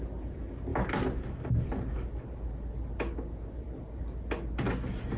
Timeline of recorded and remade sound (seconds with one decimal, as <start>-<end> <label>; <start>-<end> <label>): 0.0-5.2 recorded